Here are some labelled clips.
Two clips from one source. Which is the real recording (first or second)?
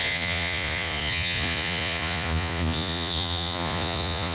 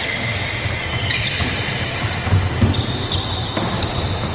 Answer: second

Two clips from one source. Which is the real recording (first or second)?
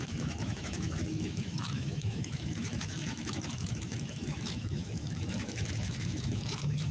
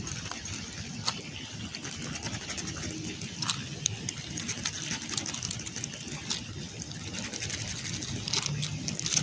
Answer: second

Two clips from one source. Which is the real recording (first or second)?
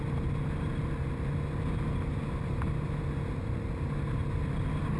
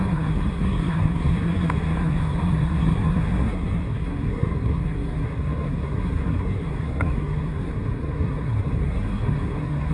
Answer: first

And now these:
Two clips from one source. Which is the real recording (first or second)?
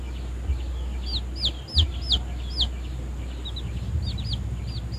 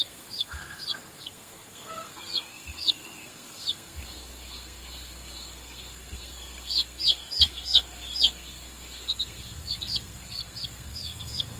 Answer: first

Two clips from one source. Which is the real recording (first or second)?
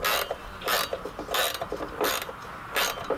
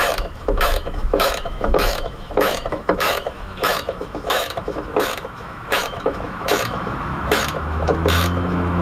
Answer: first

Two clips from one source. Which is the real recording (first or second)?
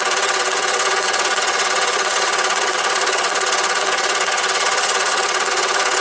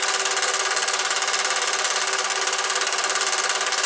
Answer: second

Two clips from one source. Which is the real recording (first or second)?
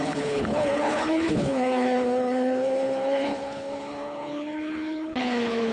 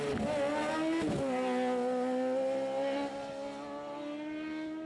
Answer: second